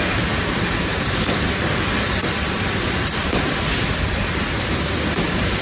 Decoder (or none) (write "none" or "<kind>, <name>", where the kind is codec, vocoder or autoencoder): vocoder, BigVGAN v2